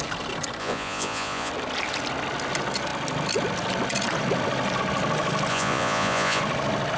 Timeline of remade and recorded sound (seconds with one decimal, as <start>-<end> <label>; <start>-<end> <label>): 0.0-0.6 recorded; 0.6-1.5 remade; 1.5-5.5 recorded; 5.5-6.4 remade; 6.4-7.0 recorded